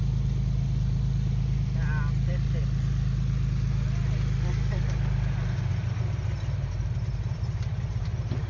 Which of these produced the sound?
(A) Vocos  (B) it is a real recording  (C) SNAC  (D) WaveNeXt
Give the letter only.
B